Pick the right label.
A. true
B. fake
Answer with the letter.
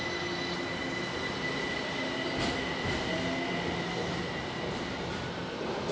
A